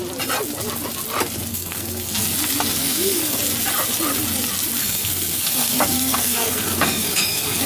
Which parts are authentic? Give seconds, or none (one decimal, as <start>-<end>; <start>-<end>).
0.0-1.5; 2.2-2.8; 3.4-4.8

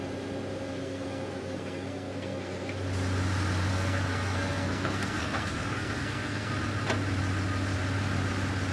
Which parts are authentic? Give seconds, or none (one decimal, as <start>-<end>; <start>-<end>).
0.0-0.7; 2.7-3.7; 6.5-8.7